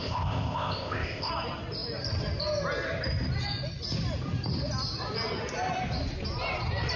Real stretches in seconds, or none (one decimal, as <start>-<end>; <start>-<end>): 1.3-7.0